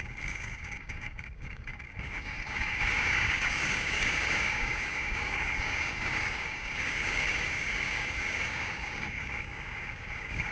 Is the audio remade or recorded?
remade